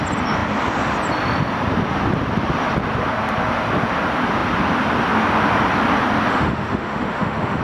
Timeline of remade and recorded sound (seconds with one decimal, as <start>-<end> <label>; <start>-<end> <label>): 0.0-6.3 recorded; 6.3-7.6 remade